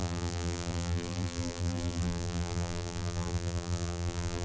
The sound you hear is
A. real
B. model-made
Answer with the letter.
B